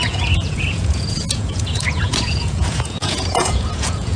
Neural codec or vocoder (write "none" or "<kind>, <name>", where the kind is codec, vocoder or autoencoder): vocoder, Vocos